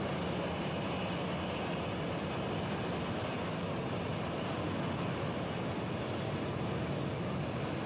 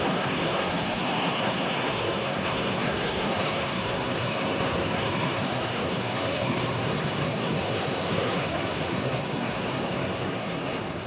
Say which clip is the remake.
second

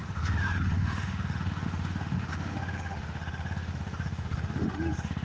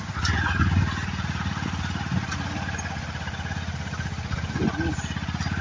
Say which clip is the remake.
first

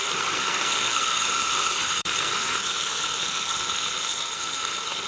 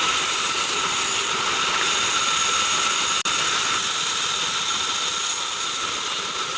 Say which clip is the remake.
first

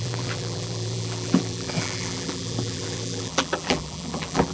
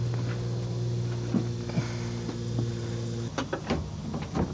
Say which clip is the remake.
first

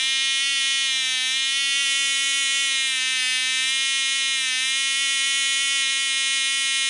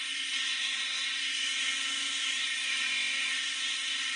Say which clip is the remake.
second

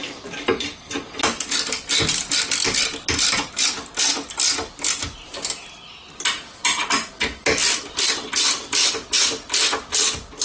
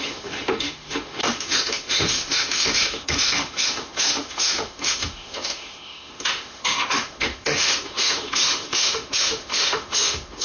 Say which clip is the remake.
second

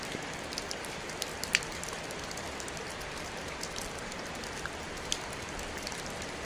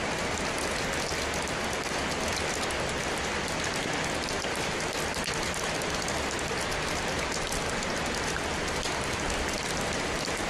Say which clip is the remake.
first